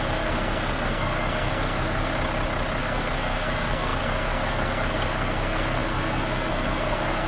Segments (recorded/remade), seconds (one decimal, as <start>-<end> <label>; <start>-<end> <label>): 0.0-2.1 remade; 2.1-2.8 recorded; 2.8-7.3 remade